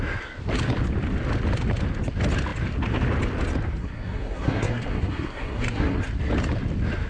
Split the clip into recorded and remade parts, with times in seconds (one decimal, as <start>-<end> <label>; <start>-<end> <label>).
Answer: 0.0-3.8 recorded; 3.8-6.0 remade; 6.0-7.1 recorded